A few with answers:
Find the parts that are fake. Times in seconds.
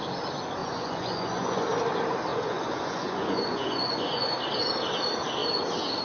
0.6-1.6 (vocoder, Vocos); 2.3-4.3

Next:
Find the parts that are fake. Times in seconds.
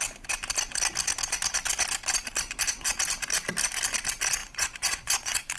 4.4-5.6 (vocoder, Vocos)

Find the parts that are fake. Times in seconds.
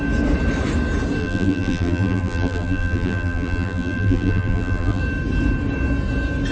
1.2-5.0 (vocoder, BigVGAN v2)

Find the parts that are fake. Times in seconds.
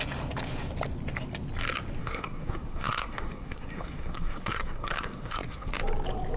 2.0-5.7 (codec, SNAC)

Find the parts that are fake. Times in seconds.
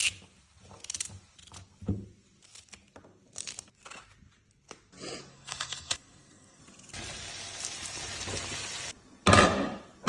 5.3-6.6 (codec, SNAC)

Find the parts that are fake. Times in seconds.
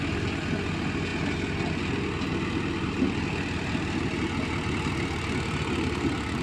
none